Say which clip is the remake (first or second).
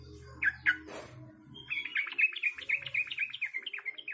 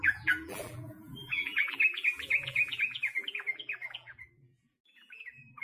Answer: second